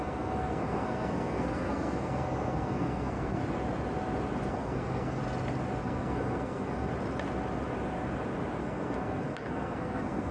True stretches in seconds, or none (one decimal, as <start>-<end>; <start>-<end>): 3.4-4.5; 5.2-5.8; 6.9-8.6